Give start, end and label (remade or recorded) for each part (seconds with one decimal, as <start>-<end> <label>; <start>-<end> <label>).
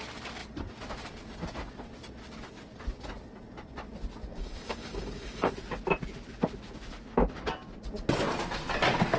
0.0-4.3 recorded; 4.3-5.5 remade; 5.5-9.2 recorded